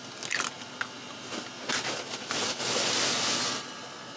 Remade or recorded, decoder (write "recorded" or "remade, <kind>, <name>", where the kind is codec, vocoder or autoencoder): recorded